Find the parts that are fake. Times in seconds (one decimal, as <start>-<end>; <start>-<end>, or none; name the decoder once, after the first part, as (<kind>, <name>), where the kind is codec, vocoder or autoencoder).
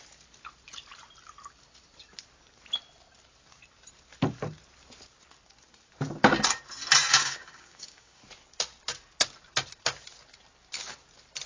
7.1-8.2 (codec, DAC)